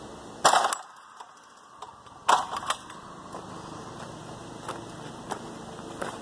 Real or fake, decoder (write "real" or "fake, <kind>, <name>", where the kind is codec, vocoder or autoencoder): real